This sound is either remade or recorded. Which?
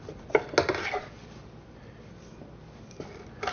recorded